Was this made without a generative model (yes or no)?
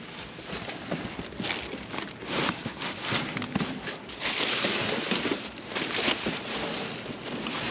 yes